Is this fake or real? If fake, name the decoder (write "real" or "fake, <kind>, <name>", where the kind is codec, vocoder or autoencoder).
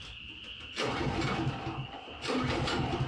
real